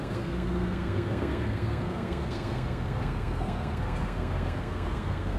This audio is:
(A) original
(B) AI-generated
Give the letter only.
B